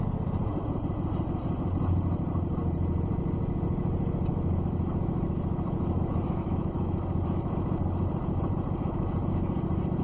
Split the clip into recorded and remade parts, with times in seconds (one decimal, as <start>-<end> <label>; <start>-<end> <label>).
0.0-4.3 recorded; 4.3-7.4 remade; 7.4-10.0 recorded

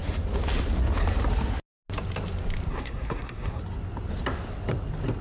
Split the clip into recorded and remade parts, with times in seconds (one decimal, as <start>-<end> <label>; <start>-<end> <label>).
0.0-2.7 recorded; 2.7-3.6 remade; 3.6-5.2 recorded

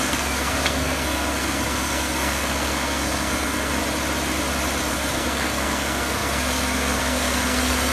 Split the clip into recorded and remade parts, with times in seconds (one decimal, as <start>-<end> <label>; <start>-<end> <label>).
0.0-3.8 remade; 3.8-4.9 recorded; 4.9-7.9 remade

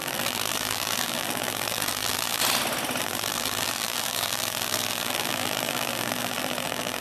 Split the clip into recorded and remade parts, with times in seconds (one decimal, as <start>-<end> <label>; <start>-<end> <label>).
0.0-2.4 remade; 2.4-3.0 recorded; 3.0-7.0 remade

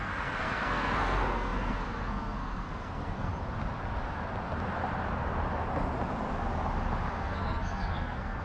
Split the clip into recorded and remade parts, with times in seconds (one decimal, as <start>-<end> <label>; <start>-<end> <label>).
0.0-3.3 remade; 3.3-7.1 recorded; 7.1-8.4 remade

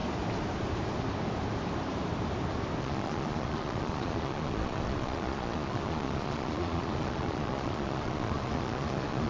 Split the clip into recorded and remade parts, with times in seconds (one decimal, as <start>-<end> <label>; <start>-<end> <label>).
0.0-2.8 recorded; 2.8-9.3 remade